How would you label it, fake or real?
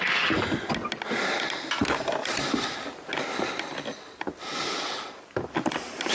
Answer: real